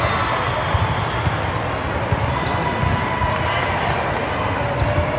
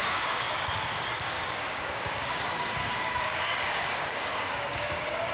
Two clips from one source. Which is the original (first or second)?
first